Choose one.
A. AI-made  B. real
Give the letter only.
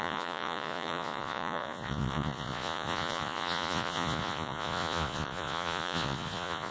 A